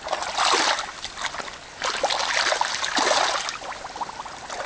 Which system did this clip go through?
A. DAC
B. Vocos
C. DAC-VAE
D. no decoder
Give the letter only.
D